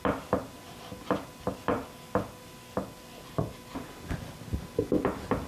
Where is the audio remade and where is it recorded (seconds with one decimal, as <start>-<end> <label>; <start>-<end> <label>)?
0.0-5.5 recorded